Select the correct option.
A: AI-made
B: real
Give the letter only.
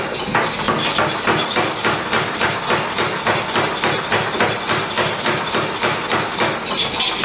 B